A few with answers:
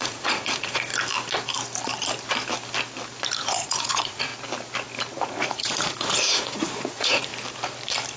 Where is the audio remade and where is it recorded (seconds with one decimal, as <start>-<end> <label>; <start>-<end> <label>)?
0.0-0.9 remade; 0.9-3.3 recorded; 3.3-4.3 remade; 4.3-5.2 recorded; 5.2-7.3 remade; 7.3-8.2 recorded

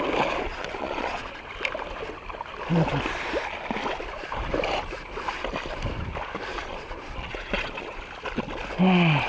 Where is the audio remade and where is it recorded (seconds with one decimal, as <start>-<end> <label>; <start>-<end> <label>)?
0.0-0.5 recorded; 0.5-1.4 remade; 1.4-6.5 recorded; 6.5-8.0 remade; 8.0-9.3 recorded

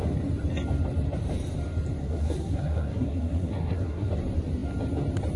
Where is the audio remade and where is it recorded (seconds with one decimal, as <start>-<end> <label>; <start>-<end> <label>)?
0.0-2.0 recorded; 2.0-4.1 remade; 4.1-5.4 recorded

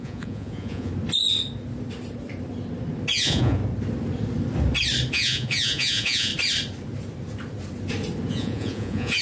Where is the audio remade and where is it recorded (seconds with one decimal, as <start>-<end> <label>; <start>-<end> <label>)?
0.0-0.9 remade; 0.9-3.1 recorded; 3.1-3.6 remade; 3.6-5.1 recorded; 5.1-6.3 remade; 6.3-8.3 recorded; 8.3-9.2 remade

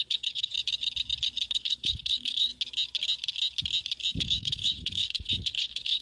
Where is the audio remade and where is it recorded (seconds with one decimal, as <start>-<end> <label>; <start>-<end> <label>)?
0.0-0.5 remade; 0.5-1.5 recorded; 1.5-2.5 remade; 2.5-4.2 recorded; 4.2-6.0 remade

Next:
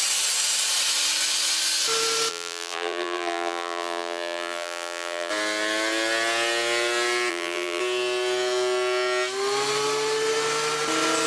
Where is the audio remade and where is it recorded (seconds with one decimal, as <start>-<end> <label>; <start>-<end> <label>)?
0.0-2.3 recorded; 2.3-5.3 remade; 5.3-7.3 recorded; 7.3-7.8 remade; 7.8-11.3 recorded

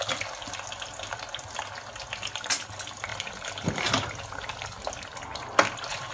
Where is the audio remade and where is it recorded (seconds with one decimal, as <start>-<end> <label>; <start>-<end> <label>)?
0.0-6.1 recorded